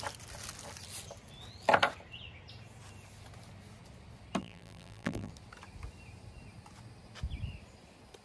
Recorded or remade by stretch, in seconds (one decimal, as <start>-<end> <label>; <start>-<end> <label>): 0.0-4.4 recorded; 4.4-5.3 remade; 5.3-8.2 recorded